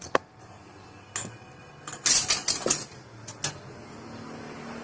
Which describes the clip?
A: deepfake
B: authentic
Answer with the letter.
B